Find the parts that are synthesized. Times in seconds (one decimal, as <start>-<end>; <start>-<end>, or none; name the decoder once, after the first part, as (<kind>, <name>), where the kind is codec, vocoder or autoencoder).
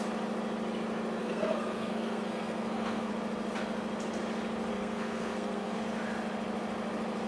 1.2-3.1 (codec, SNAC); 4.7-5.8